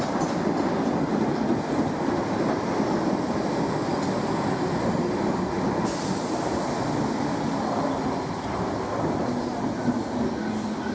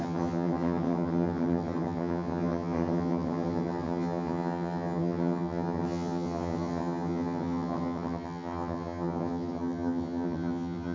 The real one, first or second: first